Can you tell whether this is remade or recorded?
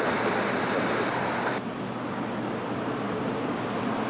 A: remade